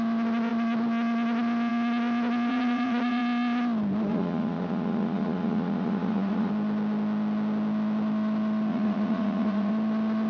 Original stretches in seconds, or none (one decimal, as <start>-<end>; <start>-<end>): 0.0-2.5; 3.2-4.1; 6.5-8.7; 9.7-10.3